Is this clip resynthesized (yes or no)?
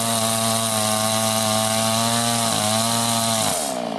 no